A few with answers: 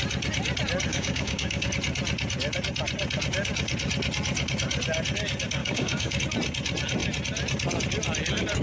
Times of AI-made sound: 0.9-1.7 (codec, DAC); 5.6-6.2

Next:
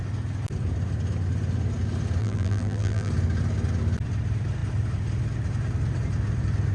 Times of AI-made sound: 2.2-3.1 (vocoder, BigVGAN v2)

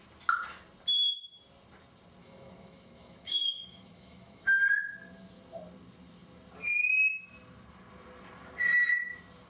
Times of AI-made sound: 2.2-4.7 (autoencoder, DAC-VAE)